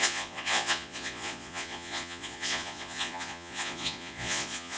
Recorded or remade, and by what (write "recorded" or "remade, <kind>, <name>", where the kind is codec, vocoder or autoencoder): remade, vocoder, Vocos